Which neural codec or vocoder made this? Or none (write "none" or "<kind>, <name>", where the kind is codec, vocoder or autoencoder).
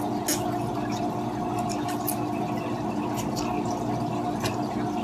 none